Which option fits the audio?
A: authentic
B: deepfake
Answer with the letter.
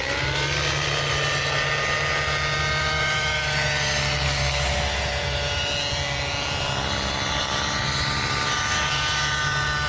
A